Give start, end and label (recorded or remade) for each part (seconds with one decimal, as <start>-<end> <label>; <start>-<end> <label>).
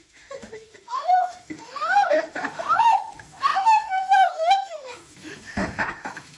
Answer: 0.0-6.4 remade